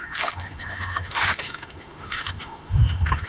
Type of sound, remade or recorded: remade